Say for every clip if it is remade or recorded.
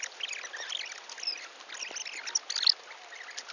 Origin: recorded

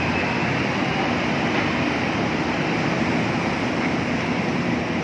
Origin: recorded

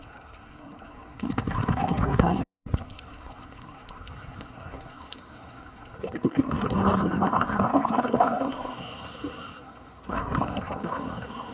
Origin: remade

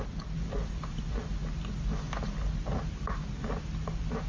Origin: recorded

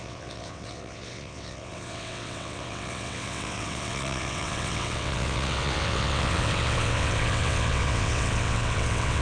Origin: remade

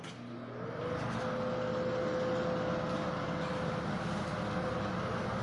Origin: recorded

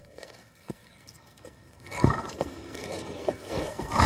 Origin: remade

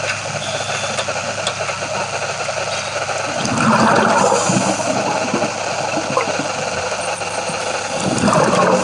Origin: recorded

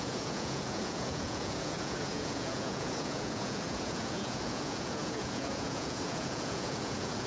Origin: remade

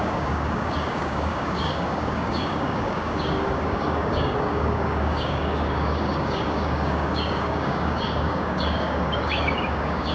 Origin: remade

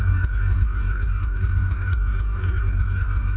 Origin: remade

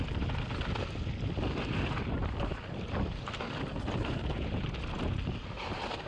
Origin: recorded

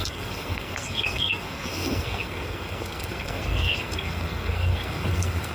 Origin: remade